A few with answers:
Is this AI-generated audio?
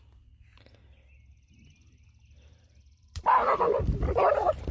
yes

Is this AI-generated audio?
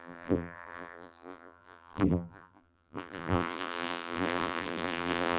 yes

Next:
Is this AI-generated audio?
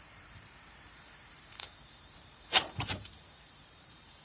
yes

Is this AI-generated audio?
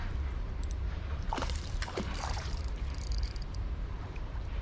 yes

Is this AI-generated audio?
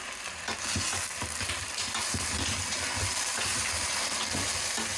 no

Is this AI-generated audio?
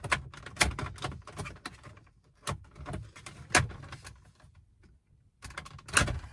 no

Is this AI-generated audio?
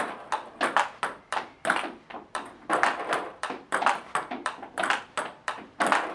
yes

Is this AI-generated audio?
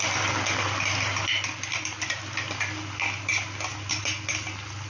no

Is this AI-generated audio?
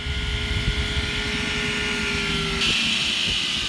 no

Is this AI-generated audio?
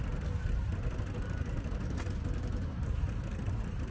no